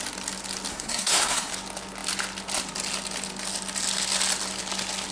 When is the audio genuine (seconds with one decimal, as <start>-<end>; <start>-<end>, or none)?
0.0-0.7; 1.5-5.1